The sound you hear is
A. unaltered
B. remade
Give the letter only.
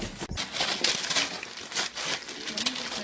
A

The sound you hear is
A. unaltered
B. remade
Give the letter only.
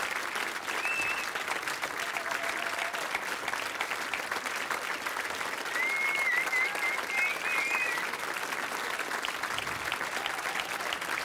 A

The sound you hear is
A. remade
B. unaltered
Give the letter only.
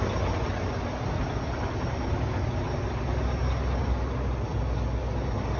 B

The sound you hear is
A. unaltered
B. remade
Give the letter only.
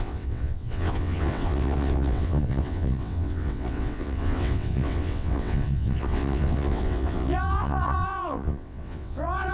B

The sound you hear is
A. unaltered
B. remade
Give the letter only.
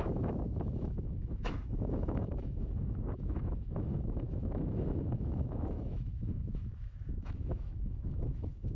B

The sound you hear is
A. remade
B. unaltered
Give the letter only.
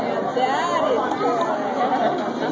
B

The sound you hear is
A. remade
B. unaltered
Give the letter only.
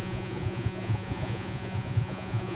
A